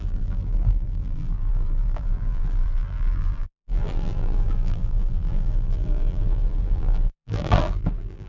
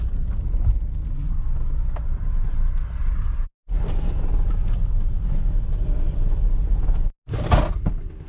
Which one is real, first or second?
second